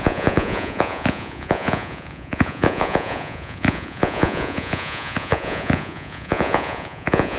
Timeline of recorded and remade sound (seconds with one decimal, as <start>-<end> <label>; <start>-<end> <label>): 0.0-7.4 remade